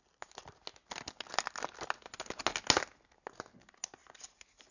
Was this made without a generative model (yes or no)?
yes